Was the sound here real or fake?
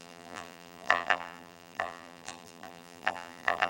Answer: fake